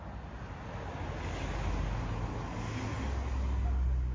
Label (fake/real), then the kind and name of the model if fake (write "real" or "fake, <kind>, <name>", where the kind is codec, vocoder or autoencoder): real